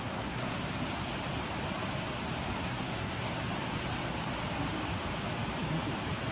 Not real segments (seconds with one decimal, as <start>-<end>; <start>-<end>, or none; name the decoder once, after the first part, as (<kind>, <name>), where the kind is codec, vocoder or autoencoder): 0.0-0.5 (codec, SNAC); 2.6-3.3